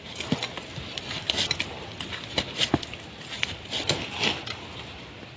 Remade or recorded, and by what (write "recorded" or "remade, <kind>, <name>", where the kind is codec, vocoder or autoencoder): recorded